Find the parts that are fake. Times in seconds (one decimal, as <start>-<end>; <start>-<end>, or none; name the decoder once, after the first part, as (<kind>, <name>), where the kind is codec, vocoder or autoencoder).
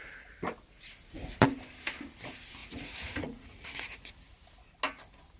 2.6-4.1 (vocoder, Vocos)